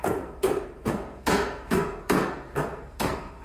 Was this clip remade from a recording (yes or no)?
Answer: yes